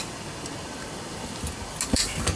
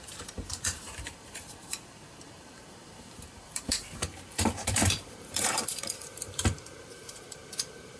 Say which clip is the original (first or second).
first